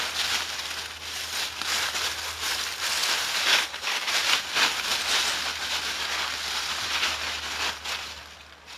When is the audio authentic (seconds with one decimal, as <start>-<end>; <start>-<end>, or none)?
0.0-3.5; 4.1-8.8

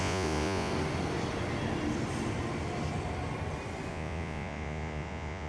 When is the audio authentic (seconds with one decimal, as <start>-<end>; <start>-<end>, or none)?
0.7-3.9

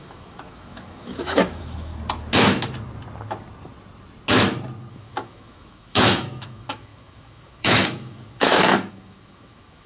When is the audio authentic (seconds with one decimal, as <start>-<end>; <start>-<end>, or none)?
1.9-4.9

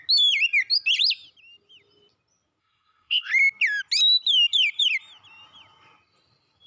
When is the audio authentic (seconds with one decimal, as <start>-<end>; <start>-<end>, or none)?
0.0-2.6; 3.3-6.7

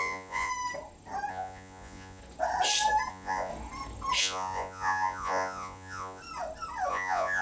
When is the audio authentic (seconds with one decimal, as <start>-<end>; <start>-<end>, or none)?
0.5-1.3; 2.2-3.1; 3.5-4.2; 6.2-6.9

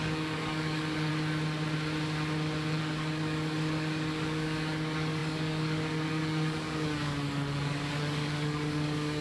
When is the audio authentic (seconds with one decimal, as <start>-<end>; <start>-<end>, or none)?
1.1-2.8

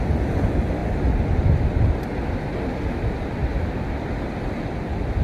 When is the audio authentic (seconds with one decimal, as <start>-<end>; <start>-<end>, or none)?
0.0-5.2